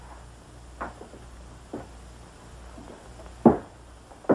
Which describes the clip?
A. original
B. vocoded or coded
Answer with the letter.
A